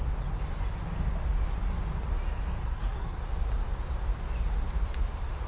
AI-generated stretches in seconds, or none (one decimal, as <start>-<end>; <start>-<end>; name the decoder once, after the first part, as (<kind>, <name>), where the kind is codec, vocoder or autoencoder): 2.6-3.2 (codec, SNAC)